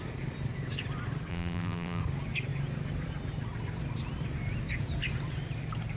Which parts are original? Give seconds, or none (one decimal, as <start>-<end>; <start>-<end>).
0.0-1.3; 2.0-6.0